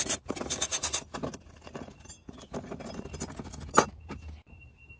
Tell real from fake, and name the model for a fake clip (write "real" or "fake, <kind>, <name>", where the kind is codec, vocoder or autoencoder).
real